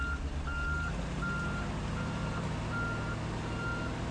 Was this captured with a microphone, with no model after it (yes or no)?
yes